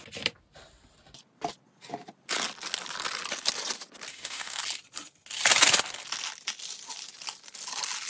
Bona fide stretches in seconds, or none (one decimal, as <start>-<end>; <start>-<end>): 0.0-4.1; 4.6-8.1